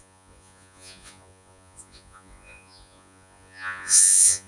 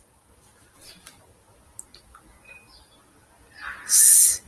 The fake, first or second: first